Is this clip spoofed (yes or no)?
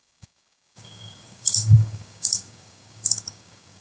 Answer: yes